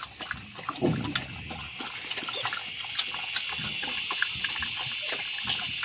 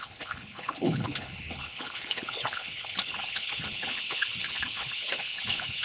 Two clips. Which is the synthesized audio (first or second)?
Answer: second